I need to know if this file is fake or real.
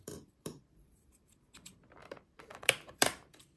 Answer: fake